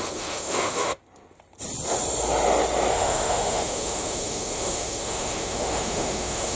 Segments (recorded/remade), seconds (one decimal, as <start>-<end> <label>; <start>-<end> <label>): 0.0-1.0 remade; 1.0-2.9 recorded; 2.9-6.5 remade